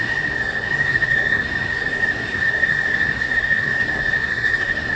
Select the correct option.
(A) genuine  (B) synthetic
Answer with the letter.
B